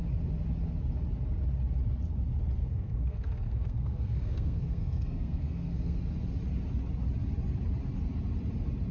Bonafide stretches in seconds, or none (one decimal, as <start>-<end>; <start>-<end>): 0.0-2.6; 6.0-8.9